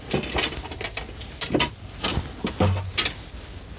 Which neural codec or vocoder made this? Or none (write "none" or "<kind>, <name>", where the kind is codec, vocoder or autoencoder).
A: none